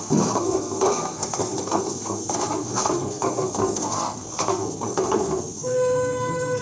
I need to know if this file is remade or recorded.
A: remade